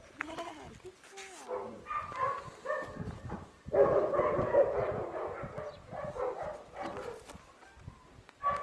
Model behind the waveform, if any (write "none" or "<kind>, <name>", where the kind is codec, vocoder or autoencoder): none